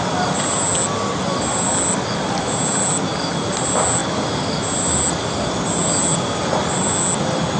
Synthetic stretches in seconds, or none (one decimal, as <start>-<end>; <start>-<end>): none